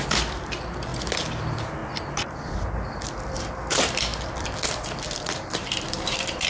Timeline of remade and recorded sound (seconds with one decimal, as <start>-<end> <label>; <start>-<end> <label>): 0.0-0.9 remade; 0.9-1.4 recorded; 1.4-1.8 remade; 1.8-3.3 recorded; 3.3-4.1 remade; 4.1-4.7 recorded; 4.7-6.5 remade